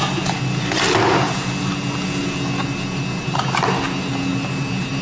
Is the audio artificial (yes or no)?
no